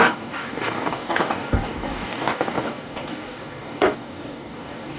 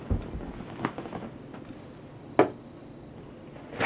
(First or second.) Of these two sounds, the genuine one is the second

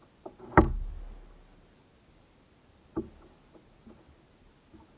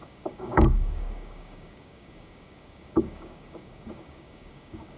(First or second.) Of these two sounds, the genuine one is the first